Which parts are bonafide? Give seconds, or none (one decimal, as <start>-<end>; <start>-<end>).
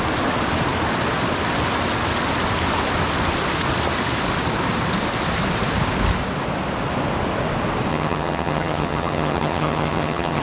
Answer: 0.0-7.9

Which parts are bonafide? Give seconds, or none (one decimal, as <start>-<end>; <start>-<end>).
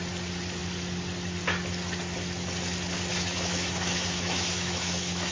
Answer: 0.0-3.1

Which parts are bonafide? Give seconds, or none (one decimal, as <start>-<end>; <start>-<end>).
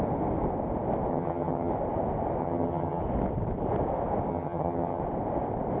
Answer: 0.0-1.1; 1.7-2.4; 3.0-4.3; 5.0-5.8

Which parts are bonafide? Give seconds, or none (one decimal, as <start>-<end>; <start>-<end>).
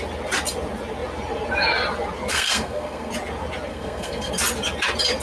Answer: 0.0-2.3; 3.1-3.7; 4.3-5.2